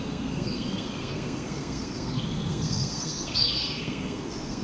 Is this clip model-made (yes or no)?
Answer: yes